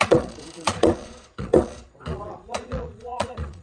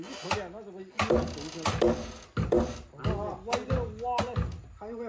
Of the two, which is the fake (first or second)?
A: first